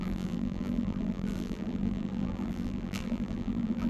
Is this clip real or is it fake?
fake